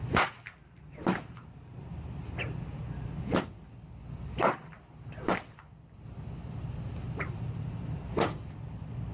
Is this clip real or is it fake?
real